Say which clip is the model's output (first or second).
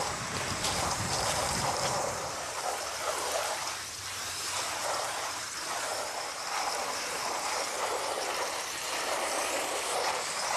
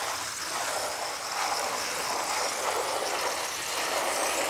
first